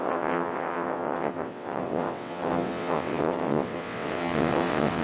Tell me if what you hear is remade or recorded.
remade